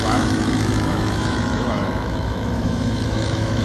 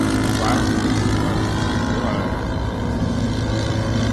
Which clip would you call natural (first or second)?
second